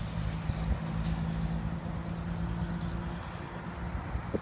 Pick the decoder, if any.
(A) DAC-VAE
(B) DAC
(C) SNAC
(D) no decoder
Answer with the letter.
D